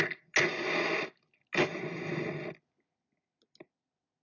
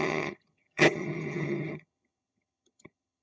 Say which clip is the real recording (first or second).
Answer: first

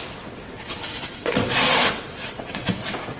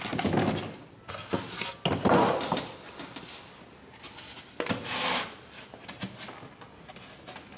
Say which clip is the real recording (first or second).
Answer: second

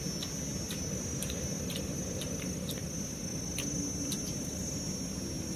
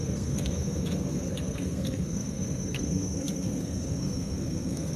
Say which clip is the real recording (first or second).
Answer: first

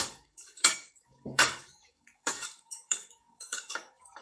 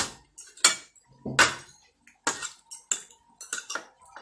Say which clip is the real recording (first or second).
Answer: second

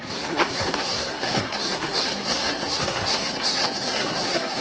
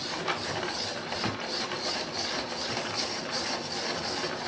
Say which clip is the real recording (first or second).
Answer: second